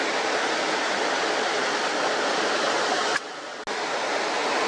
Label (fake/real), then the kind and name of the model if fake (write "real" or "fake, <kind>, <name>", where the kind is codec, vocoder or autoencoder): real